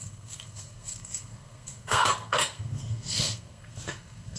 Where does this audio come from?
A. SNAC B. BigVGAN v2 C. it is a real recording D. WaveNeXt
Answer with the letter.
A